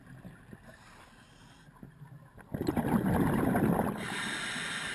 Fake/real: real